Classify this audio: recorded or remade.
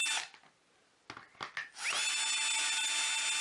recorded